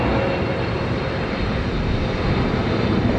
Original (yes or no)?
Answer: yes